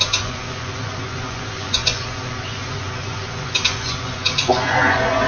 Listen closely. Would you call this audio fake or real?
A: fake